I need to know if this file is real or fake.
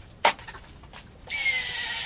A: real